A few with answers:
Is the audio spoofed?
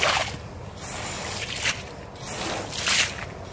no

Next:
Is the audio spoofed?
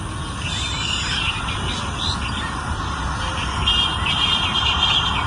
no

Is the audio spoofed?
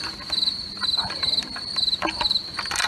no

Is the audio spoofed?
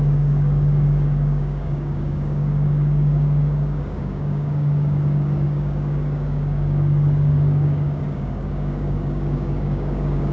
yes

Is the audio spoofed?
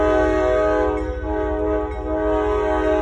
no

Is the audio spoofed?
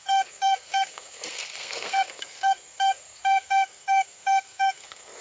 yes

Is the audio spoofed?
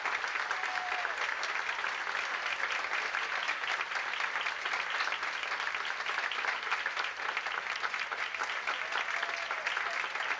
no